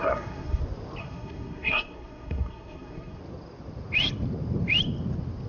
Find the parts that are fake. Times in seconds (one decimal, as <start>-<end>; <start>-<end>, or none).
0.0-0.6; 1.0-3.2